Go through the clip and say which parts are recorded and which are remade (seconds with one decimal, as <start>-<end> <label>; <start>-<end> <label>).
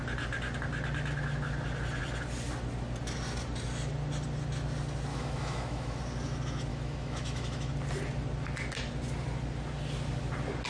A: 0.0-5.1 recorded; 5.1-6.0 remade; 6.0-6.7 recorded; 6.7-7.7 remade; 7.7-10.7 recorded